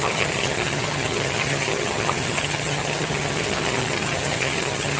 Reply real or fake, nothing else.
fake